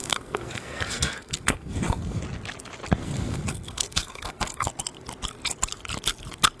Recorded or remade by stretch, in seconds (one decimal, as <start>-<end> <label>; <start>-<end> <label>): 0.0-2.2 remade; 2.2-3.0 recorded; 3.0-4.7 remade; 4.7-6.6 recorded